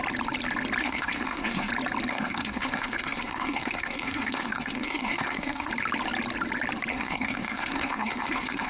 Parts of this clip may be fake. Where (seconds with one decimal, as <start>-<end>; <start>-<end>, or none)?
0.8-1.7; 2.1-5.7; 6.9-8.7